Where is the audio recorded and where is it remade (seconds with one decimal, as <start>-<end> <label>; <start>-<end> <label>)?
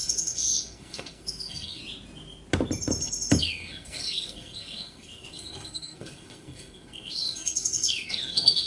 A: 0.0-1.8 remade; 1.8-3.4 recorded; 3.4-8.7 remade